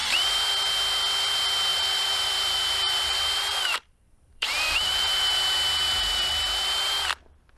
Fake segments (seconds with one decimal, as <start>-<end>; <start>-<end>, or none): 0.0-0.5; 1.7-6.3